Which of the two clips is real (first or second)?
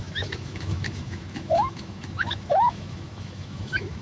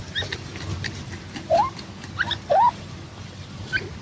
second